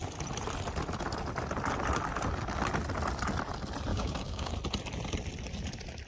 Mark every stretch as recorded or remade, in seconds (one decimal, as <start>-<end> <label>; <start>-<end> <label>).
0.0-3.9 recorded; 3.9-4.5 remade; 4.5-6.1 recorded